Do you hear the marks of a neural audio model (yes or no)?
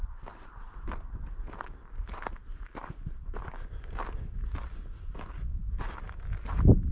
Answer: no